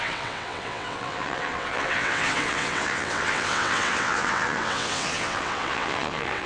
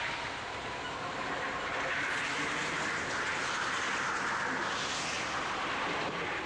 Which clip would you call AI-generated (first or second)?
first